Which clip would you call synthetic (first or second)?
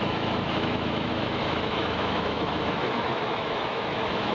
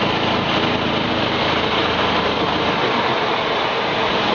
first